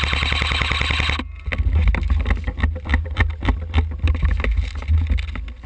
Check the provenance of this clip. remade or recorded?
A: recorded